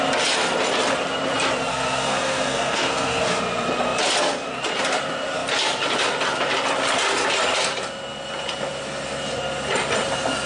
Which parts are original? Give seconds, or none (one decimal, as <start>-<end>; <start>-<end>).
0.0-1.7; 3.4-10.5